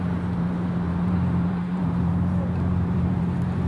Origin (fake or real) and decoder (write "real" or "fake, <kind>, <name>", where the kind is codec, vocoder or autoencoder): fake, vocoder, BigVGAN v2